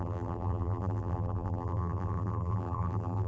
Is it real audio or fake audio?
fake